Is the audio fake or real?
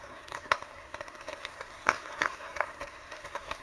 fake